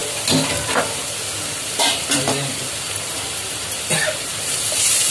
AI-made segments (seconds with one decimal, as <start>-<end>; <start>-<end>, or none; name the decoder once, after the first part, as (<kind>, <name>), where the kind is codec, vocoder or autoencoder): 0.0-2.8 (vocoder, BigVGAN v2); 4.3-5.1